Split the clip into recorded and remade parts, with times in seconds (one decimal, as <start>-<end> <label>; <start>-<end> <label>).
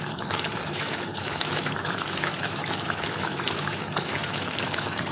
0.0-5.1 remade